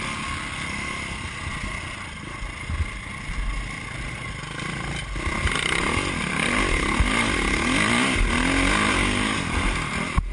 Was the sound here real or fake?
real